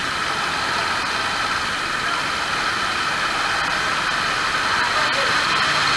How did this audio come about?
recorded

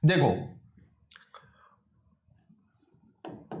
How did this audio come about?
recorded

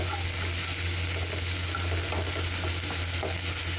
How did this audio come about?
recorded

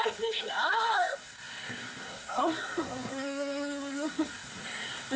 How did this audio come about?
remade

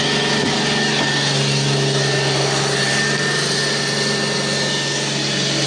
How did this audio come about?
recorded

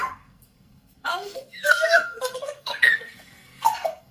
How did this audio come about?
remade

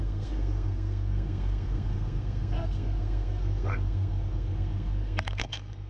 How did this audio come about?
remade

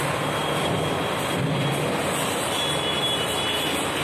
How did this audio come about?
recorded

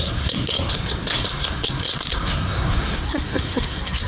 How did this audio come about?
remade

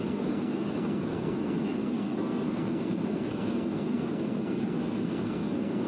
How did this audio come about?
remade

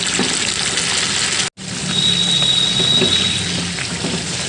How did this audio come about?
recorded